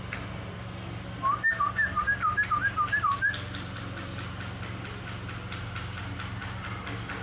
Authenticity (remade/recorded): recorded